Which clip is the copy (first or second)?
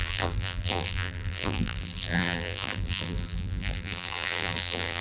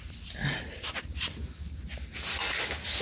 first